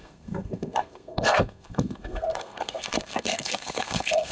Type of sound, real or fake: fake